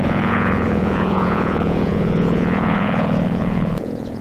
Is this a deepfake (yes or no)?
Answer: yes